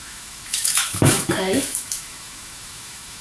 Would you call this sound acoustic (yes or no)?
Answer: no